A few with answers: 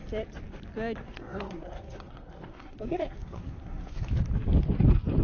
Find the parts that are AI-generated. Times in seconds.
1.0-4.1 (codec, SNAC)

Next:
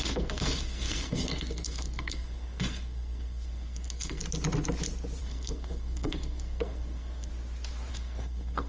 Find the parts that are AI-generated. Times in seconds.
0.0-4.2 (codec, SNAC); 5.2-7.3; 7.9-8.7

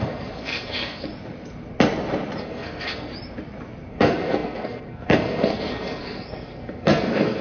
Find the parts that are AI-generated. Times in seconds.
0.0-1.1 (codec, SNAC); 2.4-3.1; 3.9-7.4

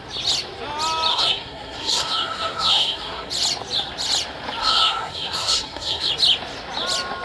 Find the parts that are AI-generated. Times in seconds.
1.1-3.3 (codec, SNAC); 4.6-6.1

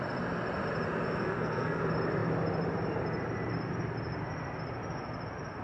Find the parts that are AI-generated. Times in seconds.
1.2-1.8 (codec, SNAC)

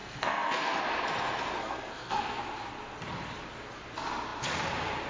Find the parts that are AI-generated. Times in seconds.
0.0-0.8 (codec, SNAC); 1.6-2.4

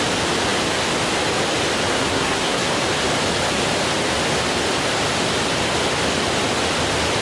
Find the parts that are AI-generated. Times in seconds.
1.9-2.7 (codec, SNAC)